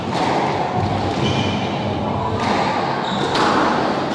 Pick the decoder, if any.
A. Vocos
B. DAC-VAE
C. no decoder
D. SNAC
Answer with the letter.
C